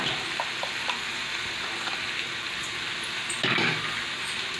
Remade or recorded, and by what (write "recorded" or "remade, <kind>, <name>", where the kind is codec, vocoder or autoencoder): recorded